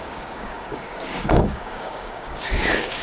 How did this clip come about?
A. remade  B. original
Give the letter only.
A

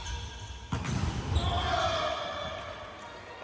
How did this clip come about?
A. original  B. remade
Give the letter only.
A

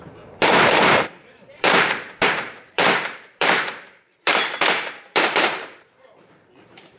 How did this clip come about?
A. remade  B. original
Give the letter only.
A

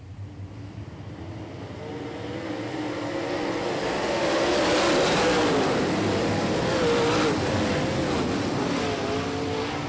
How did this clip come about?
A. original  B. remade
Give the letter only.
A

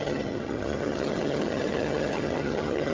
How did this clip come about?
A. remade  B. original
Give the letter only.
A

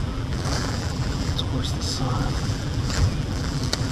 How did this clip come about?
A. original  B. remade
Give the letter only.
B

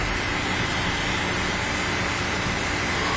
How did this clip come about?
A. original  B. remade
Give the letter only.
A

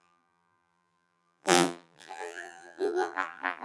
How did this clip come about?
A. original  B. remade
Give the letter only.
B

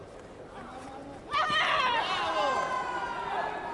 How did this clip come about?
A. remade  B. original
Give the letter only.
B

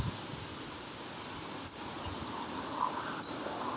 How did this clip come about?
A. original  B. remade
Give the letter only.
A